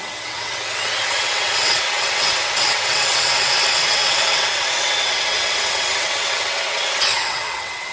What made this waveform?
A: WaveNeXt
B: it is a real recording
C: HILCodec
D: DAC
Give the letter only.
A